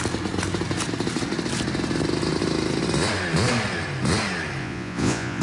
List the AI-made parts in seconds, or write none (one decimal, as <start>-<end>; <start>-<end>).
4.6-5.4